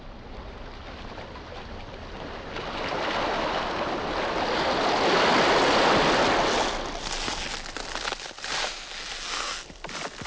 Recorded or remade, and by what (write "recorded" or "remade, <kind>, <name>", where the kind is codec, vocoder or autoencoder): recorded